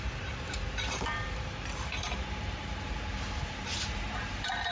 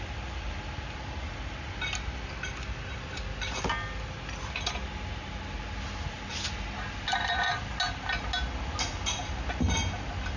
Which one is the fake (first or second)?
first